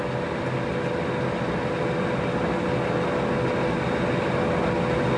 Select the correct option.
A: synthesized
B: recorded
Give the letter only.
B